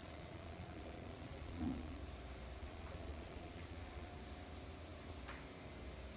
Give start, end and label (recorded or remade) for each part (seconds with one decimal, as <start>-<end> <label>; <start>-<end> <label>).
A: 0.0-2.0 remade; 2.0-2.6 recorded; 2.6-4.1 remade; 4.1-6.2 recorded